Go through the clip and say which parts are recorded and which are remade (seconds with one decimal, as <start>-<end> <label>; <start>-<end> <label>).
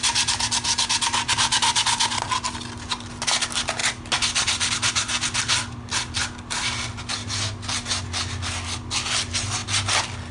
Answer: 0.0-10.3 recorded